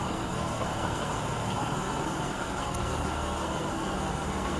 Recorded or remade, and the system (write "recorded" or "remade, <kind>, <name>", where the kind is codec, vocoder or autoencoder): remade, codec, SNAC